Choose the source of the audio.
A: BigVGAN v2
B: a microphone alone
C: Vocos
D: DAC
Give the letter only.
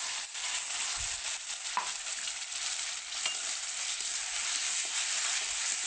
B